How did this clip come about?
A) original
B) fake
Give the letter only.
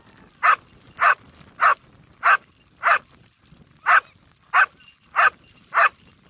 A